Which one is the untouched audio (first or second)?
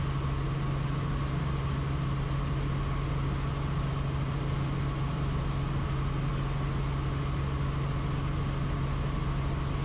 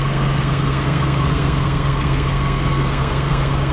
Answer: first